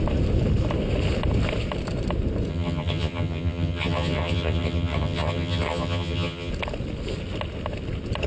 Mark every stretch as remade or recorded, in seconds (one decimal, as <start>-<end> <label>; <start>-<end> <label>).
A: 0.0-2.5 recorded; 2.5-6.5 remade; 6.5-8.3 recorded